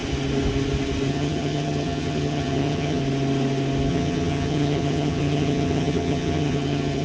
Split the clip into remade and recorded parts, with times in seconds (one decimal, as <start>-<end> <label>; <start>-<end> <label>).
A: 0.0-1.1 recorded; 1.1-3.0 remade; 3.0-3.9 recorded; 3.9-7.0 remade